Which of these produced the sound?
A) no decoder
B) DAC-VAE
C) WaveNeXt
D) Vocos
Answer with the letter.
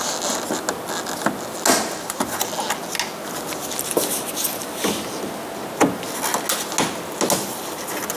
A